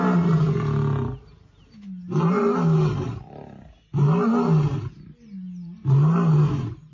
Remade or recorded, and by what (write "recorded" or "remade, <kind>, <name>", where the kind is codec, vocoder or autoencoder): recorded